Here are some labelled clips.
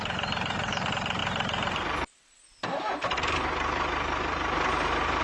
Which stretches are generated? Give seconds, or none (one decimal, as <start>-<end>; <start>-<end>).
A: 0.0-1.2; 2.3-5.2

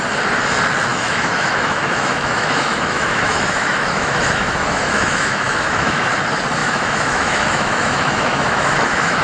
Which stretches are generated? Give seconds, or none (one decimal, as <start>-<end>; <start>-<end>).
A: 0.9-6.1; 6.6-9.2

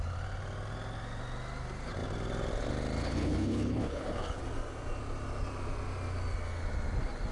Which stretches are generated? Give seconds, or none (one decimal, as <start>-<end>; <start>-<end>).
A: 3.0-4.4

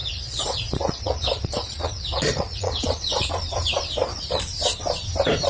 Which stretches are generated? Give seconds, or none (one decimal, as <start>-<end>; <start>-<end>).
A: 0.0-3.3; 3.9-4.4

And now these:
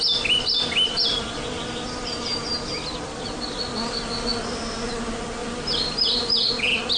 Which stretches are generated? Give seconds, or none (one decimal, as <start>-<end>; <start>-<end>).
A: 5.4-6.6

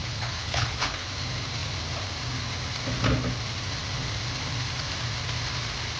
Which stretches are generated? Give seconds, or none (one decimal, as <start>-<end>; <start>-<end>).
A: 0.0-1.1

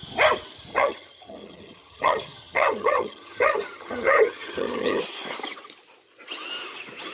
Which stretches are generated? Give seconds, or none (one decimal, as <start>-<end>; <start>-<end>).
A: 0.7-5.0

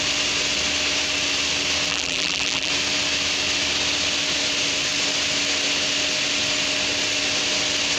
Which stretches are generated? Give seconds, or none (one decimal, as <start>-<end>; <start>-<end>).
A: 1.9-2.7